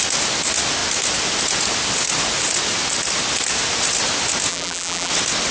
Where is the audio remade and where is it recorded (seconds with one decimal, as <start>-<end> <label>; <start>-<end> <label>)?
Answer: 0.0-4.5 recorded; 4.5-5.1 remade; 5.1-5.5 recorded